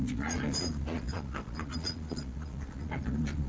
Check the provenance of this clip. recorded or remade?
remade